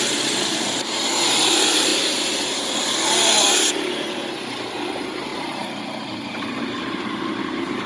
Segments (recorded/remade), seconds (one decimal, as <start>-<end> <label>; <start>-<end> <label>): 0.0-1.9 remade; 1.9-4.0 recorded; 4.0-5.3 remade; 5.3-6.3 recorded; 6.3-7.9 remade